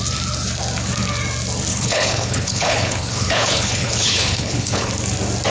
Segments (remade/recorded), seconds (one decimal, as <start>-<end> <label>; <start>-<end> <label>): 0.0-1.7 recorded; 1.7-4.9 remade; 4.9-5.5 recorded